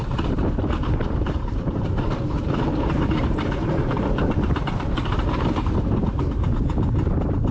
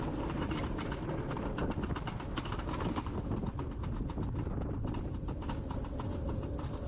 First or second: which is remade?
first